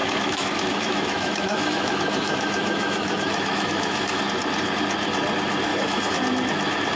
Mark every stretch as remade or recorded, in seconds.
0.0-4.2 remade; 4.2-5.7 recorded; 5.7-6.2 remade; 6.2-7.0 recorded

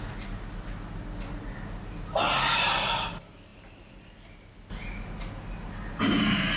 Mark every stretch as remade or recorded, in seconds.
0.0-6.6 recorded

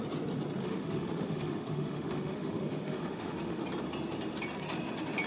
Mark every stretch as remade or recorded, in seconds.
0.0-0.6 recorded; 0.6-3.6 remade; 3.6-5.3 recorded

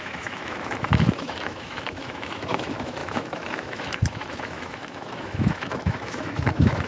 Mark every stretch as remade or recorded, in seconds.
0.0-6.9 remade

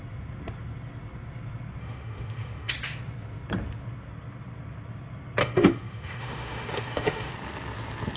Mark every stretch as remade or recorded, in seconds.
0.0-1.8 recorded; 1.8-2.7 remade; 2.7-5.4 recorded; 5.4-7.3 remade; 7.3-8.2 recorded

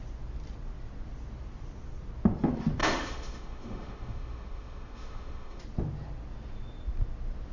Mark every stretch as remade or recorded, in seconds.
0.0-2.8 recorded; 2.8-5.6 remade; 5.6-7.5 recorded

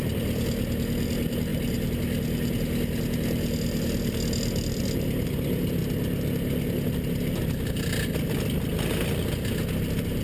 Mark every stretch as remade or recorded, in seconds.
0.0-10.2 recorded